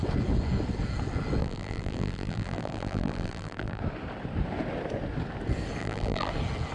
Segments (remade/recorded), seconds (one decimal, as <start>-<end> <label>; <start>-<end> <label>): 0.0-1.4 recorded; 1.4-3.8 remade; 3.8-5.8 recorded; 5.8-6.3 remade; 6.3-6.7 recorded